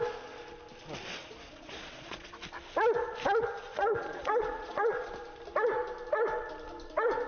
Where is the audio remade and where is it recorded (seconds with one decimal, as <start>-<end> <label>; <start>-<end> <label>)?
0.0-1.2 recorded; 1.2-2.4 remade; 2.4-3.7 recorded; 3.7-5.1 remade; 5.1-7.3 recorded